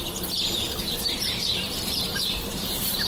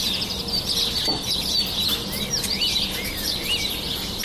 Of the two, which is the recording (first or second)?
second